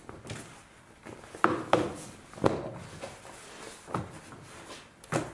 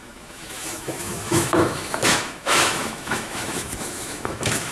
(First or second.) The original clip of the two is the first